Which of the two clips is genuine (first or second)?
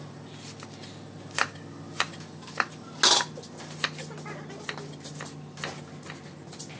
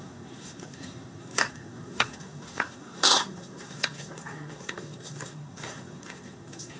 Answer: first